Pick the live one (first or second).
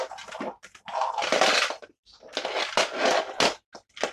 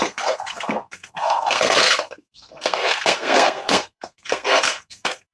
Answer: first